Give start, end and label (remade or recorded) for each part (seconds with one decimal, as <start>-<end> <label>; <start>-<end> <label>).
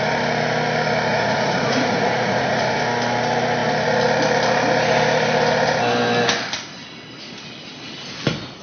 0.0-1.1 recorded; 1.1-2.8 remade; 2.8-8.6 recorded